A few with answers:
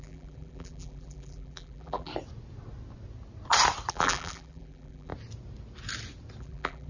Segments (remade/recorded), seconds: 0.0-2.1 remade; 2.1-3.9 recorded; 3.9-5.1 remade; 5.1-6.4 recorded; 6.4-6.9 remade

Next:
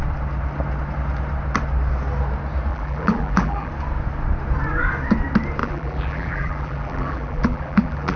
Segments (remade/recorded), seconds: 0.0-2.7 recorded; 2.7-3.7 remade; 3.7-5.6 recorded; 5.6-8.2 remade

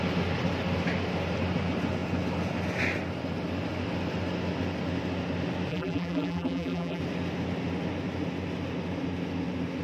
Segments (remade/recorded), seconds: 0.0-5.7 recorded; 5.7-7.0 remade; 7.0-9.8 recorded